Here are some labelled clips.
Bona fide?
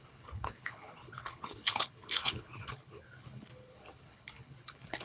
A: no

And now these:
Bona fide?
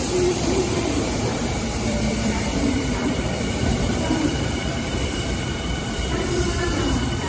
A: no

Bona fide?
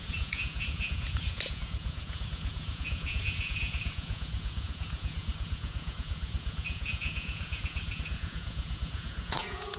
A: no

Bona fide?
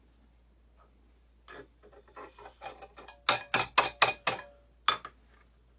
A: yes